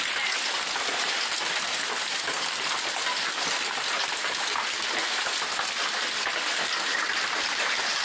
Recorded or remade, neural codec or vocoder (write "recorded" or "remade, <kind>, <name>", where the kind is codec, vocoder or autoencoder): recorded